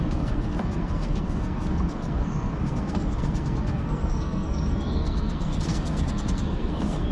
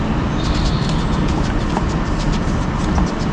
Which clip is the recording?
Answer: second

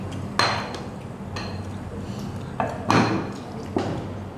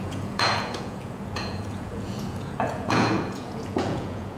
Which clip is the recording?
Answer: first